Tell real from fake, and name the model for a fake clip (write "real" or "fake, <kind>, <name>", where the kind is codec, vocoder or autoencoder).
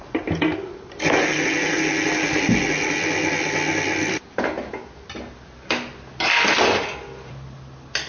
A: real